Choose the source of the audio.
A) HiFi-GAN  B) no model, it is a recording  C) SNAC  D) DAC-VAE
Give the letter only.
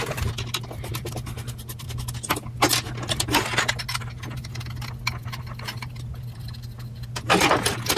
B